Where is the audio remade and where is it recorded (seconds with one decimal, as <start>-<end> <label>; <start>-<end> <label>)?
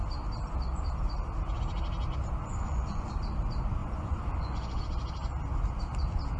0.0-2.4 recorded; 2.4-3.1 remade; 3.1-3.8 recorded; 3.8-4.8 remade; 4.8-6.4 recorded